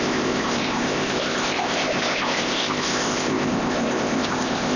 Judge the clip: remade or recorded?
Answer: remade